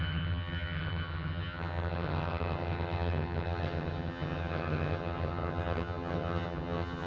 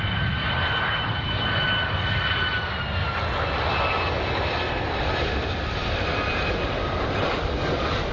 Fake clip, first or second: first